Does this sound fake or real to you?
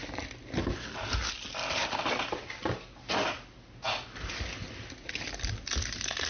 real